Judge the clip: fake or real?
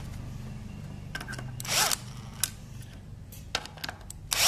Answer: real